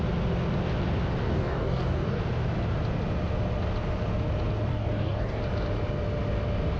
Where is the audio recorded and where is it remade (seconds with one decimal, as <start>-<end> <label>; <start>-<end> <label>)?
0.0-1.2 recorded; 1.2-2.2 remade; 2.2-4.7 recorded; 4.7-5.4 remade; 5.4-6.8 recorded